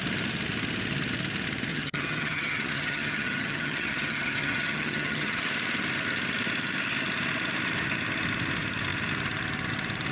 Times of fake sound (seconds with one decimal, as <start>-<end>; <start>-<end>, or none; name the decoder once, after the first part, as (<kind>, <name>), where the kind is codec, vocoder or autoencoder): 1.7-5.4 (vocoder, HiFi-GAN)